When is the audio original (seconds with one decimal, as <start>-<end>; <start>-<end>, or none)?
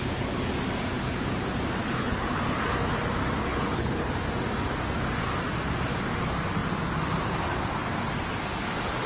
0.0-1.8; 2.4-3.5; 4.1-9.1